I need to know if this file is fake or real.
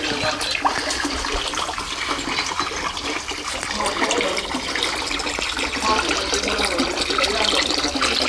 real